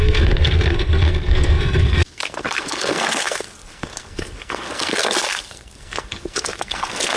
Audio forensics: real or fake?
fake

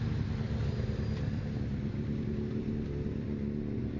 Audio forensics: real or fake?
real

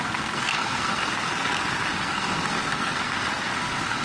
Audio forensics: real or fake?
fake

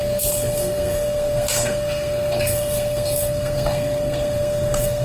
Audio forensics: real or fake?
fake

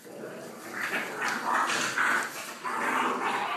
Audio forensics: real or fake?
real